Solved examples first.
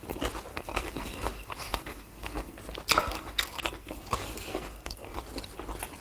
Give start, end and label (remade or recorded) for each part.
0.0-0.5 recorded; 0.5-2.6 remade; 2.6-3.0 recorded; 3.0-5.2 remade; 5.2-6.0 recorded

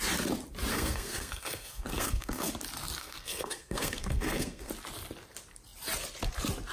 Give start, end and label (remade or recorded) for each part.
0.0-0.7 recorded; 0.7-2.5 remade; 2.5-3.0 recorded; 3.0-4.7 remade; 4.7-6.7 recorded